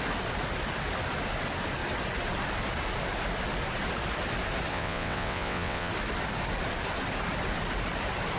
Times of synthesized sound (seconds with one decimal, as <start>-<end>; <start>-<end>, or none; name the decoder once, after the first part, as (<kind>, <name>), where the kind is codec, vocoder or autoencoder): 4.7-5.9 (vocoder, WaveNeXt)